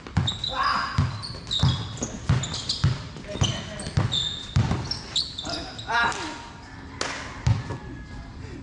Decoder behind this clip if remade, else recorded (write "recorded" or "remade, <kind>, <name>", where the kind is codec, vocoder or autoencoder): recorded